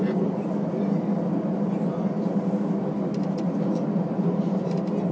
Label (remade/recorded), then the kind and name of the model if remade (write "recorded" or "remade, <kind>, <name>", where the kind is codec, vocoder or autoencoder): recorded